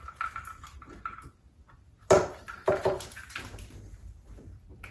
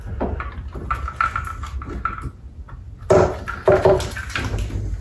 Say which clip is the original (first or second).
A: second